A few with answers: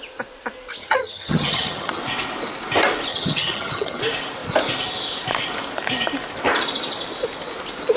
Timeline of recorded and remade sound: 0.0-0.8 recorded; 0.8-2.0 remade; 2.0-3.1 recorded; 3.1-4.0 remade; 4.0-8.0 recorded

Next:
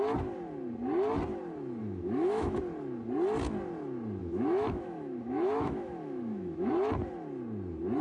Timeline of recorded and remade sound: 0.0-1.8 recorded; 1.8-2.6 remade; 2.6-4.2 recorded; 4.2-6.7 remade; 6.7-8.0 recorded

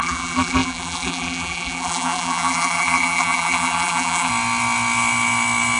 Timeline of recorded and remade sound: 0.0-4.3 remade; 4.3-5.8 recorded

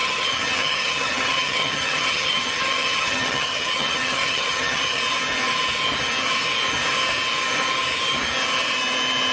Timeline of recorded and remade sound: 0.0-5.0 remade; 5.0-9.3 recorded

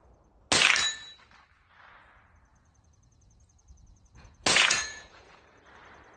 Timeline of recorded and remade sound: 0.0-2.5 recorded; 2.5-5.6 remade; 5.6-6.2 recorded

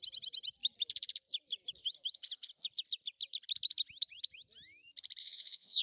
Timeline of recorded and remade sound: 0.0-5.2 recorded; 5.2-5.8 remade